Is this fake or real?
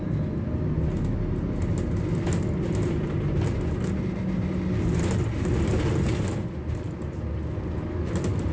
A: real